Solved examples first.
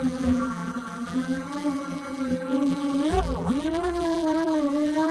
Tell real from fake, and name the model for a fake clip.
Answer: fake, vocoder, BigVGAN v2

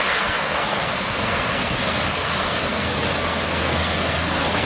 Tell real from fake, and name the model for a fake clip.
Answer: fake, codec, SNAC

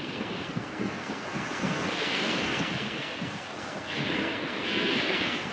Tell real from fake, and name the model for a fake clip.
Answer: fake, codec, SNAC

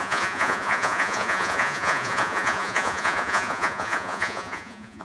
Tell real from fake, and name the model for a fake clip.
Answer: fake, vocoder, Vocos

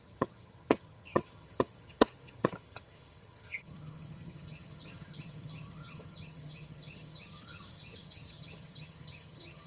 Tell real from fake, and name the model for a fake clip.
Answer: fake, vocoder, HiFi-GAN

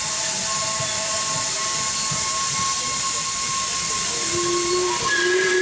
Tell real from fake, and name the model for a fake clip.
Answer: real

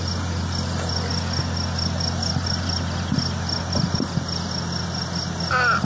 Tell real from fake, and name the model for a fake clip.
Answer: real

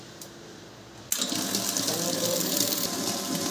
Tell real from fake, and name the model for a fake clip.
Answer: real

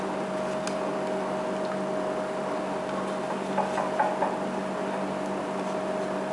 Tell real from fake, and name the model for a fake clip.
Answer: real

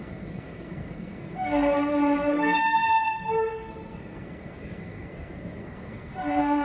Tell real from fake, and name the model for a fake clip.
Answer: fake, codec, SNAC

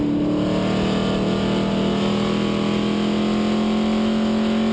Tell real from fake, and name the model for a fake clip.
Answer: real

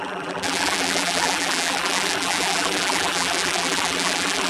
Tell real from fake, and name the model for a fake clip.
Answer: fake, vocoder, BigVGAN v2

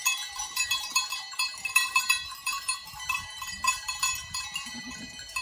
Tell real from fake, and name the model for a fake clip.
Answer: fake, vocoder, BigVGAN v2